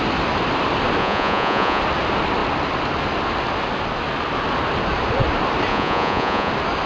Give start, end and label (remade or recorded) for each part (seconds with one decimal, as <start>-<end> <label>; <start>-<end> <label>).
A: 0.0-1.0 recorded; 1.0-1.8 remade; 1.8-5.7 recorded; 5.7-6.5 remade; 6.5-6.9 recorded